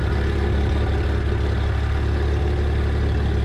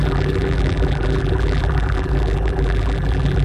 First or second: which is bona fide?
first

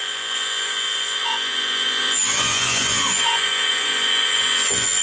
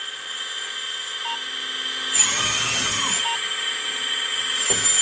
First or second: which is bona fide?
second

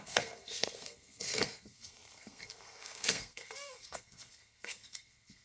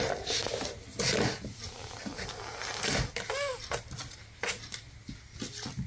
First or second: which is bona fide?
second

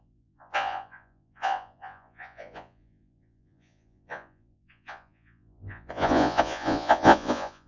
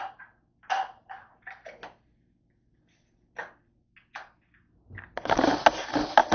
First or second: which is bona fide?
second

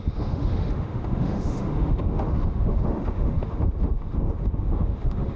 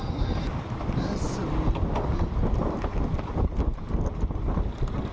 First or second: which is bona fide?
second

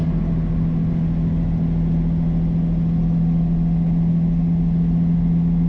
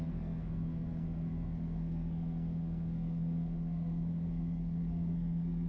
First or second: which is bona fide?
first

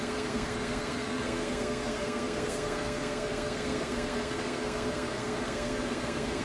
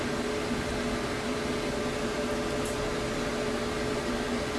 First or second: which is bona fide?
second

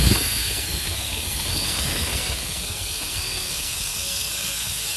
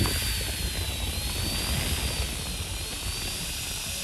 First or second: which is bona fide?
second